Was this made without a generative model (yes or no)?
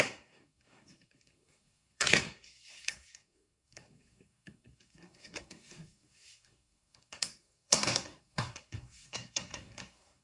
no